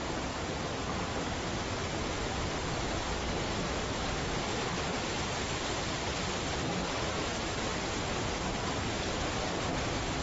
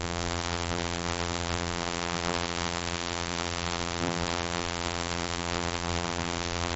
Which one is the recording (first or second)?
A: first